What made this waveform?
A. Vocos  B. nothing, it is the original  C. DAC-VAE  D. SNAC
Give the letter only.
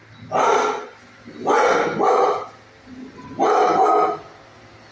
B